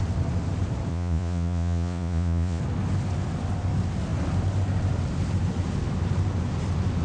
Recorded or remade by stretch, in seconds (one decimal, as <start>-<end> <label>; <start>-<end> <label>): 0.0-0.9 recorded; 0.9-2.6 remade; 2.6-7.0 recorded